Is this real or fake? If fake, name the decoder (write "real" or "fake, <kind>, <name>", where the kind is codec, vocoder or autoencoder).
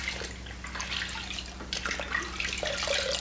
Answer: real